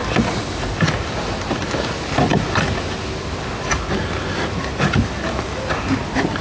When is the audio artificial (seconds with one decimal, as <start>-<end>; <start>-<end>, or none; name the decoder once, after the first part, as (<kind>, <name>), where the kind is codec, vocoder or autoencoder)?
0.8-2.3 (vocoder, BigVGAN v2)

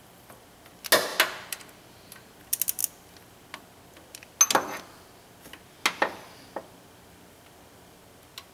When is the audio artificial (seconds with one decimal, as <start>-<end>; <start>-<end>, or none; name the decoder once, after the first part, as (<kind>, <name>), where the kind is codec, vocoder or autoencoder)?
none